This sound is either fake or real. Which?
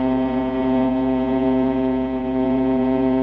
fake